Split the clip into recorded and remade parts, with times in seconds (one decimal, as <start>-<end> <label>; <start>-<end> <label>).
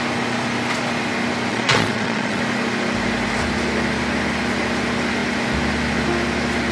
0.0-1.5 recorded; 1.5-2.4 remade; 2.4-6.7 recorded